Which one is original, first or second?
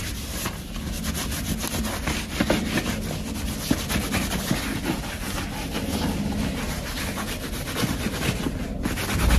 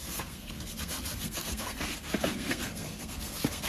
first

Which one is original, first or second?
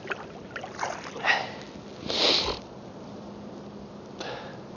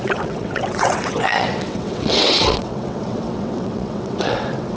first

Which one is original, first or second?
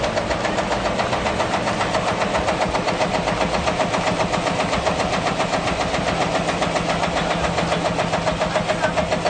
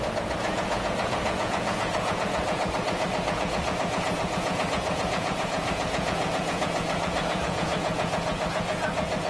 first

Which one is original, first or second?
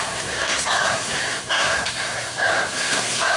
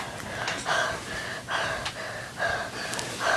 second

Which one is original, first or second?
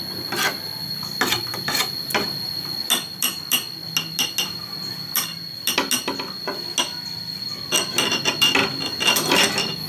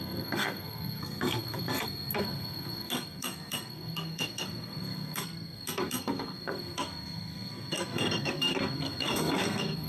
first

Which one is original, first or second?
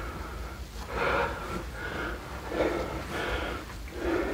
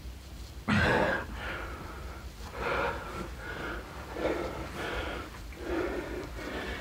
first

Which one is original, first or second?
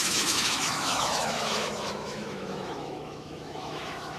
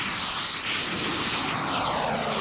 second